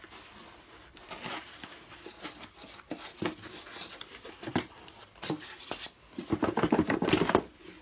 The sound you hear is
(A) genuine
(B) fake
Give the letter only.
B